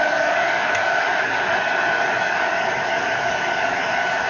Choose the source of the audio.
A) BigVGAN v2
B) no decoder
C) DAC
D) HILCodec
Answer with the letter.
C